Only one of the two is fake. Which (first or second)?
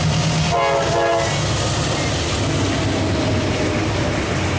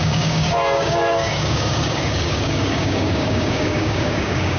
second